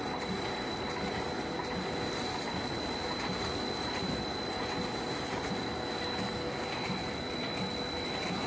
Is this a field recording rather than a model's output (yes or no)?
yes